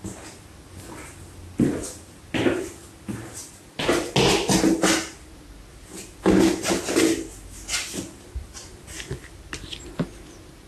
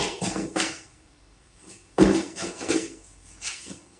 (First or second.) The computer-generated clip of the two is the second